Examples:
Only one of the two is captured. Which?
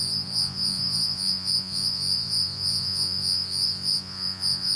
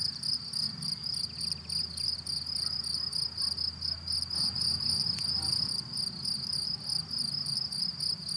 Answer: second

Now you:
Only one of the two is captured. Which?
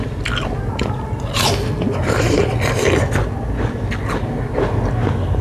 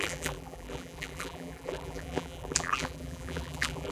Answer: first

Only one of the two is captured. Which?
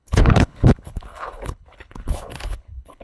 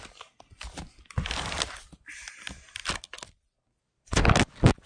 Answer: second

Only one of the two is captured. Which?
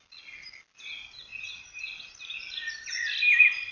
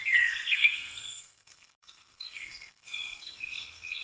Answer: first